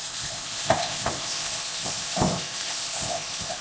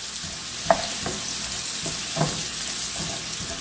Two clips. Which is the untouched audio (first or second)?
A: second